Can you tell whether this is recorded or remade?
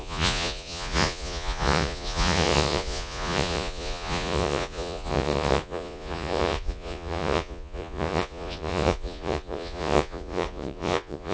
remade